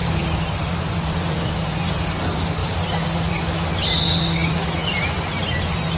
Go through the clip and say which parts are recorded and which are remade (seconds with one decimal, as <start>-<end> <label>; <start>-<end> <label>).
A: 0.0-1.9 remade; 1.9-6.0 recorded